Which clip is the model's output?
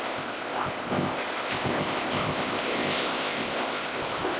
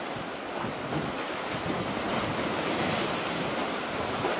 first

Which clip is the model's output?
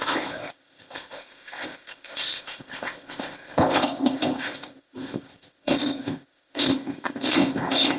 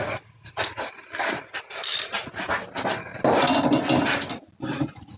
first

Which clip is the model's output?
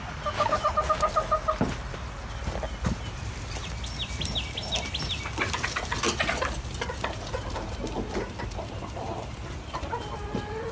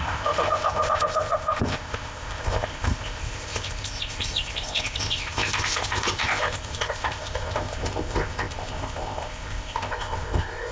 second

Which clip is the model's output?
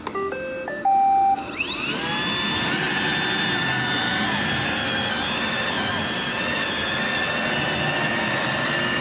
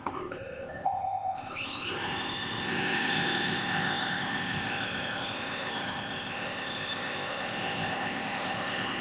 second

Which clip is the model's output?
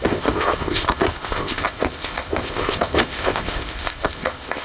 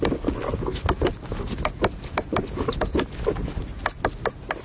first